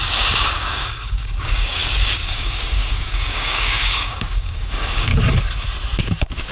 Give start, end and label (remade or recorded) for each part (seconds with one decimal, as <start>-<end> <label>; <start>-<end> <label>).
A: 0.0-5.1 remade; 5.1-6.0 recorded; 6.0-6.5 remade